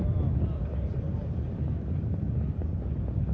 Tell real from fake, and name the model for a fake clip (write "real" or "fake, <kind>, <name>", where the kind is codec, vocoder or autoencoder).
real